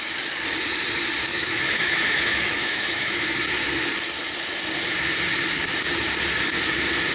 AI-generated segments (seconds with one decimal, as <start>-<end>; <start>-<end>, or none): 1.3-3.4